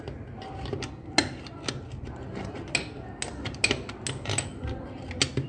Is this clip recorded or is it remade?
recorded